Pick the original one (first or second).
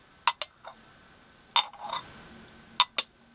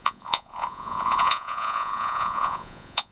first